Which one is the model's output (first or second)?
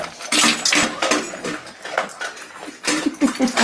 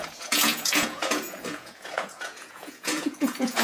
second